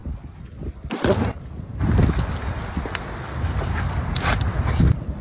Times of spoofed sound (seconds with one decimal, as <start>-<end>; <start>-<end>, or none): none